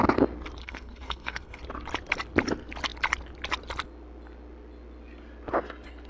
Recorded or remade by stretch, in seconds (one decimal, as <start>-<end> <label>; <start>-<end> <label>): 0.0-0.6 recorded; 0.6-1.6 remade; 1.6-6.1 recorded